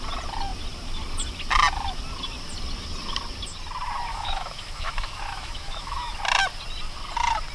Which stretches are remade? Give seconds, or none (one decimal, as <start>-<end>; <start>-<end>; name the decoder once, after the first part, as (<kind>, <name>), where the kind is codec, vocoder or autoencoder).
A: 4.1-6.2 (autoencoder, DAC-VAE)